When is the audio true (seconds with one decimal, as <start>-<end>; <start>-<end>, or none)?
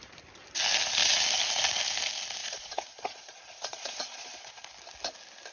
0.0-2.4; 4.7-5.5